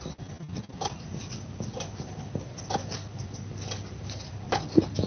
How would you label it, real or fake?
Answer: real